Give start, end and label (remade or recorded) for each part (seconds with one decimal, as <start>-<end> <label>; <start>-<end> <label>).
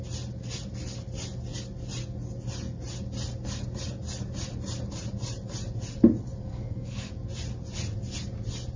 0.0-6.5 recorded; 6.5-7.1 remade; 7.1-8.8 recorded